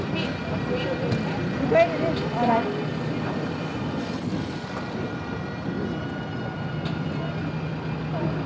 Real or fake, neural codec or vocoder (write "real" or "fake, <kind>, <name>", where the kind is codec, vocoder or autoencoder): real